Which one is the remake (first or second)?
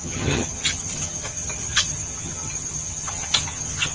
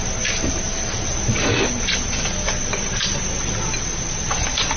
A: first